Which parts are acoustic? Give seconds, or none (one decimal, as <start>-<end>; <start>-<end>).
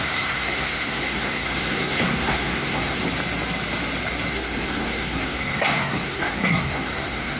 3.0-4.3